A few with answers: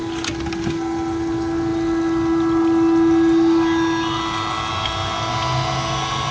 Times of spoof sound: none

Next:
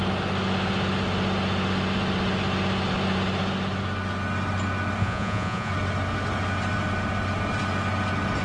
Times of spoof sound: 5.0-5.7

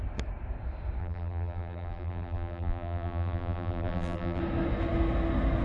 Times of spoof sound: 1.0-4.4